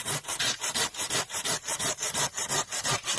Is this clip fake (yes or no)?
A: no